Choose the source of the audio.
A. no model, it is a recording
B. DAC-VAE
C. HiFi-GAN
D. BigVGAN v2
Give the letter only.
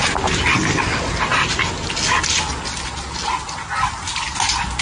A